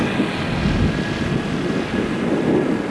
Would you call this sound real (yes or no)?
yes